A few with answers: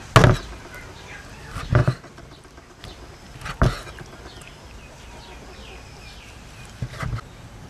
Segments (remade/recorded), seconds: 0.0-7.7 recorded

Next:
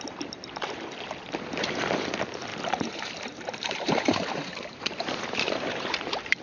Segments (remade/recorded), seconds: 0.0-2.5 recorded; 2.5-6.4 remade